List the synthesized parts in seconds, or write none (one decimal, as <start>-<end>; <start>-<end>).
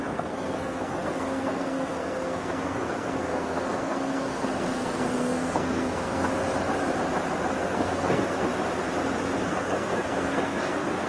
0.0-6.3; 7.6-8.5; 9.5-11.1